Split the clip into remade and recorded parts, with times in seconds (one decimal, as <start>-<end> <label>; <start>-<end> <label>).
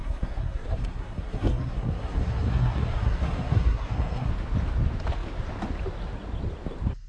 0.0-4.3 remade; 4.3-7.1 recorded